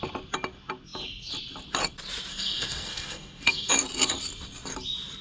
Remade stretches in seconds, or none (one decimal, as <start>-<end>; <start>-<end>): 2.3-3.7